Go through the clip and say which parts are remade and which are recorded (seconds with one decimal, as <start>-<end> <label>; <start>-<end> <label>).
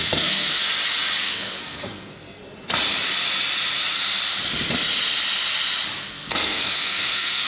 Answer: 0.0-0.6 remade; 0.6-1.2 recorded; 1.2-2.4 remade; 2.4-6.1 recorded; 6.1-7.5 remade